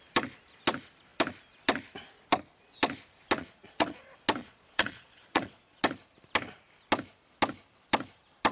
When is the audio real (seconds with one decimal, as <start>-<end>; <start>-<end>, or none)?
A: 0.0-3.4; 4.0-4.4; 5.8-8.5